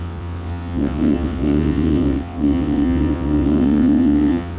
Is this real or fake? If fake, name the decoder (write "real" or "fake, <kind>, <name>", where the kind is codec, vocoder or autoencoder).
fake, vocoder, WaveNeXt